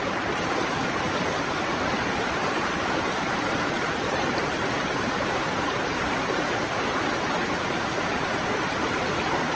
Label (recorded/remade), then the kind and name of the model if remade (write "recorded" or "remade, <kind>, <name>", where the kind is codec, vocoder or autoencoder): remade, vocoder, BigVGAN v2